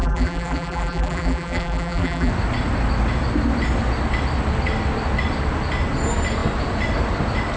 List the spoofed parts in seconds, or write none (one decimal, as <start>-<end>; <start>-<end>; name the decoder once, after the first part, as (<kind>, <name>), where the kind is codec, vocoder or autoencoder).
0.0-2.3 (vocoder, BigVGAN v2)